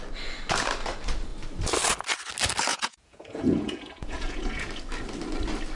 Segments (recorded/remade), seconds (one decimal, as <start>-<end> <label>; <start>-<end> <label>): 0.0-2.7 recorded; 2.7-4.7 remade; 4.7-5.8 recorded